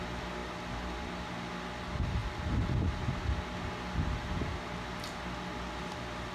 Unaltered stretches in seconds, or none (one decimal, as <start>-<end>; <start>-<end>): 0.0-6.3